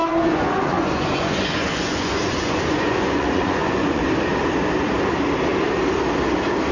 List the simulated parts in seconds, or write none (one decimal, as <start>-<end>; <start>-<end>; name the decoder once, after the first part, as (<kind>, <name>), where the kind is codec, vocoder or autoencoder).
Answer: 0.0-4.0 (vocoder, Vocos)